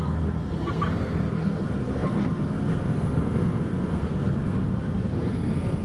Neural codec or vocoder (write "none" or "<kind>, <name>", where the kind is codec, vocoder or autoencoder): codec, SNAC